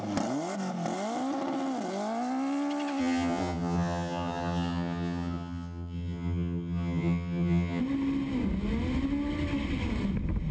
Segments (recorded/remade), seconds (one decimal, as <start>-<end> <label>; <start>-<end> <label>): 0.0-3.0 recorded; 3.0-7.8 remade; 7.8-10.5 recorded